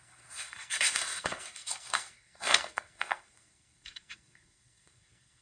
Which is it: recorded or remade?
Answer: remade